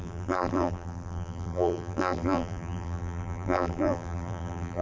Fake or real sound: fake